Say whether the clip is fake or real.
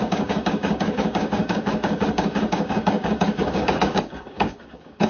fake